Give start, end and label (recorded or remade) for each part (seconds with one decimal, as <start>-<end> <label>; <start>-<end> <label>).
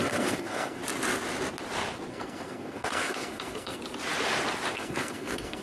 0.0-0.8 remade; 0.8-2.1 recorded; 2.1-3.8 remade; 3.8-4.7 recorded; 4.7-5.6 remade